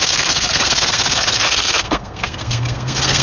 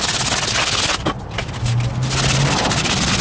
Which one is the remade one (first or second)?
first